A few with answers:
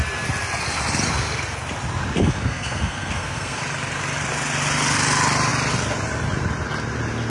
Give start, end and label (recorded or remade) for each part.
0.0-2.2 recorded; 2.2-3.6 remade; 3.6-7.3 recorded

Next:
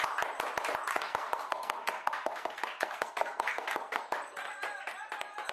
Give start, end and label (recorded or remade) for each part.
0.0-0.9 recorded; 0.9-4.0 remade; 4.0-5.5 recorded

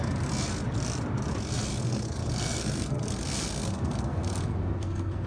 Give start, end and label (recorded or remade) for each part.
0.0-1.7 recorded; 1.7-5.3 remade

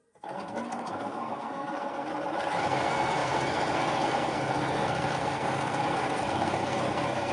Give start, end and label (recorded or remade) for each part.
0.0-2.1 remade; 2.1-2.6 recorded; 2.6-7.3 remade

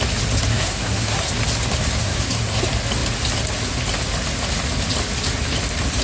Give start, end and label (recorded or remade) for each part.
0.0-0.5 recorded; 0.5-1.3 remade; 1.3-2.0 recorded; 2.0-2.6 remade; 2.6-6.0 recorded

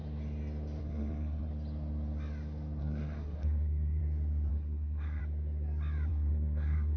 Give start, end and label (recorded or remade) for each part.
0.0-0.8 recorded; 0.8-1.5 remade; 1.5-2.8 recorded; 2.8-4.0 remade; 4.0-4.5 recorded; 4.5-5.2 remade; 5.2-6.1 recorded; 6.1-7.0 remade